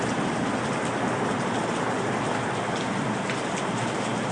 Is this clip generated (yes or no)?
no